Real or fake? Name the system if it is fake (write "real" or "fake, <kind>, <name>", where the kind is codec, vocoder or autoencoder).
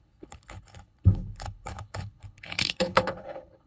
fake, codec, HILCodec